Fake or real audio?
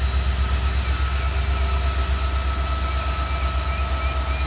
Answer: real